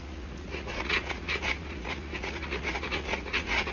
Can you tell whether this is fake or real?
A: fake